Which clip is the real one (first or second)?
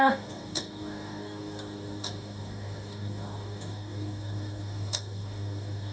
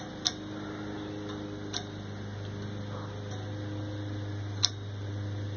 second